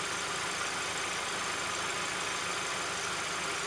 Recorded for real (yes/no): yes